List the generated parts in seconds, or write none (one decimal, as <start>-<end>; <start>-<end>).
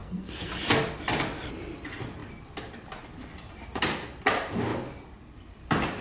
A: 0.0-0.5